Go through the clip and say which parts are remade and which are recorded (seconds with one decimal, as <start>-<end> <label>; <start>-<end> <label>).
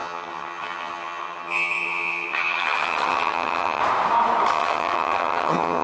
0.0-3.8 remade; 3.8-4.5 recorded; 4.5-5.8 remade